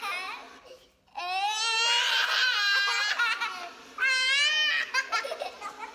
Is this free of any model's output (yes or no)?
yes